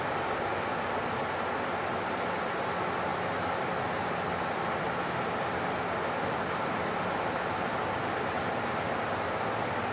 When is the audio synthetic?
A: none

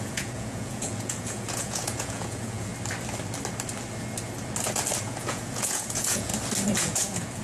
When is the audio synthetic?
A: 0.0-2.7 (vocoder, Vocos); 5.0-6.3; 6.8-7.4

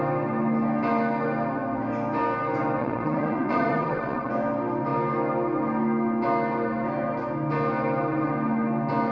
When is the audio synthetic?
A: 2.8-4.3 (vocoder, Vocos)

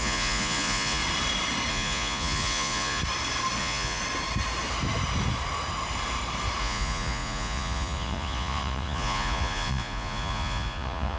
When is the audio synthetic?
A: 0.0-1.0 (vocoder, Vocos); 1.7-3.0; 3.6-4.0; 6.6-11.2